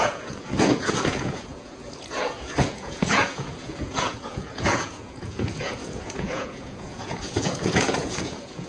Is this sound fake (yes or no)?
yes